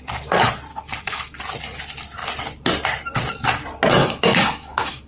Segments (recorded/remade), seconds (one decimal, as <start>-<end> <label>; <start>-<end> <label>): 0.0-0.7 recorded; 0.7-1.4 remade; 1.4-4.0 recorded; 4.0-5.1 remade